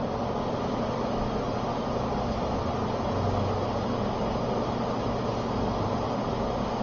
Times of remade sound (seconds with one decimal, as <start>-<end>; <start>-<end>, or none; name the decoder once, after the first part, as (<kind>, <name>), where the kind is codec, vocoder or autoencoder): 0.0-2.5 (vocoder, BigVGAN v2)